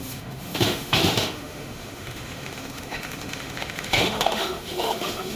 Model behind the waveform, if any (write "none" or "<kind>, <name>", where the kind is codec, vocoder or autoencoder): autoencoder, DAC-VAE